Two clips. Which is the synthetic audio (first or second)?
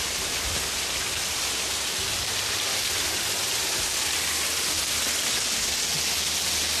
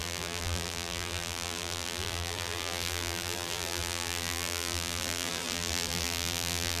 second